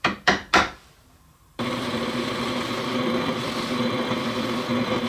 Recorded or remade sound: remade